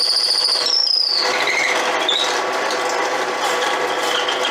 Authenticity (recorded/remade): recorded